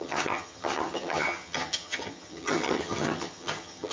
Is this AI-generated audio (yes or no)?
yes